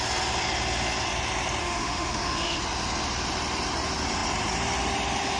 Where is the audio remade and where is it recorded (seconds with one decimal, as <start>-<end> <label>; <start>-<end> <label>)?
0.0-1.6 recorded; 1.6-2.6 remade; 2.6-5.4 recorded